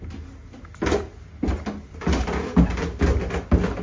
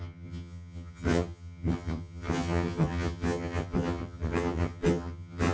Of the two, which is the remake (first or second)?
second